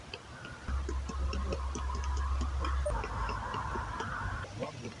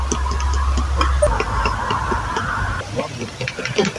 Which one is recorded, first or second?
second